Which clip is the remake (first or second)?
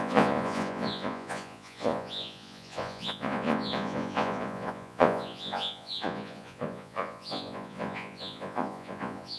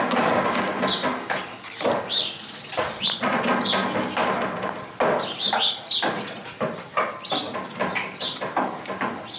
first